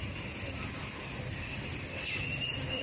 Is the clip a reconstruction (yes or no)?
no